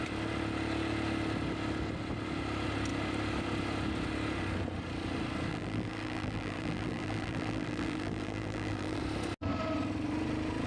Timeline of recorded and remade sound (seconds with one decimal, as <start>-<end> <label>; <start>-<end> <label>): 0.0-5.5 recorded; 5.5-9.0 remade; 9.0-10.7 recorded